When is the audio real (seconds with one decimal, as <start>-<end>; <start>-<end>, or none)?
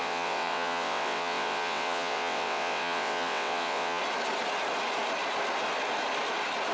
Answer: 4.0-6.7